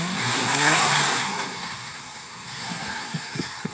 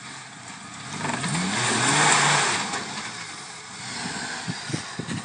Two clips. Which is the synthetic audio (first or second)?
first